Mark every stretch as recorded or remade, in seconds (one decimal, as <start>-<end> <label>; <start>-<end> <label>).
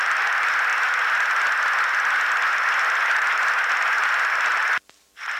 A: 0.0-0.7 remade; 0.7-3.7 recorded; 3.7-5.4 remade